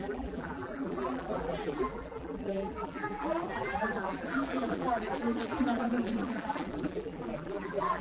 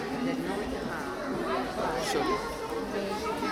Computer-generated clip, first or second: first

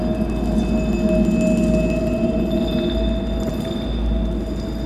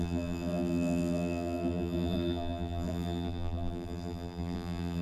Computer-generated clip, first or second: second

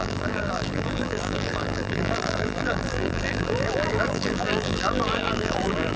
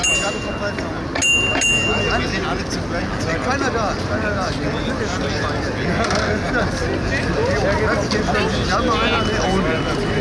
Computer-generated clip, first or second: first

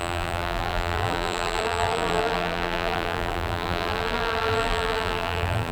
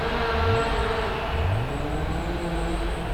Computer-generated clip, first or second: first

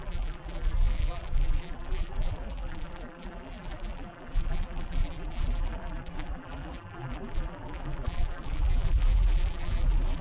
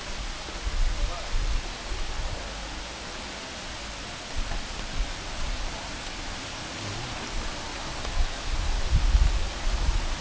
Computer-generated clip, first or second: first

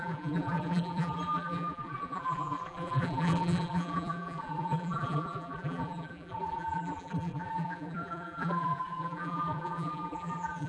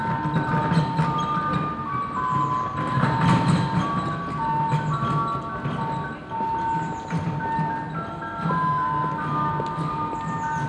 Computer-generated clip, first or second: first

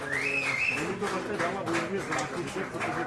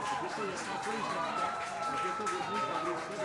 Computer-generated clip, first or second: second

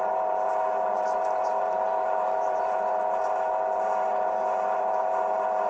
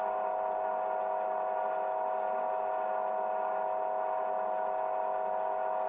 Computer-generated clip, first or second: first